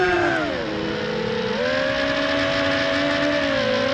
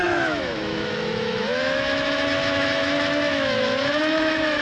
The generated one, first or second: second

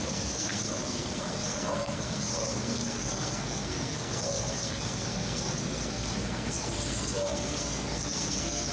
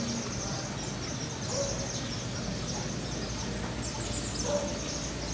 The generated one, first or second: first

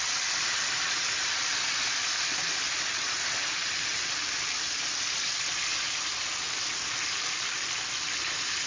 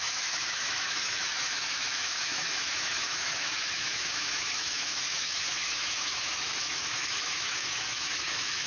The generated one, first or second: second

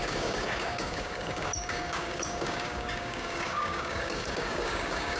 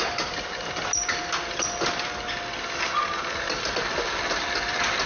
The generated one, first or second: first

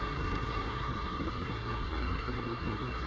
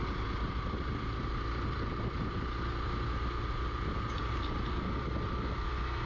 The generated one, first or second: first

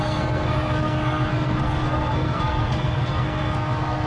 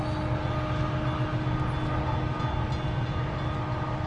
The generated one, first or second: first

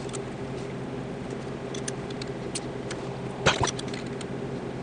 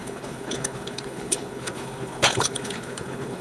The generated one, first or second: second